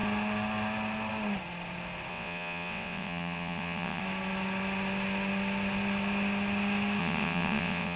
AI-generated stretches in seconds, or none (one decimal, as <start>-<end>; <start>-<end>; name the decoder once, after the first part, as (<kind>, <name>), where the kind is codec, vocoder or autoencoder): 2.1-4.0 (vocoder, WaveNeXt); 7.0-8.0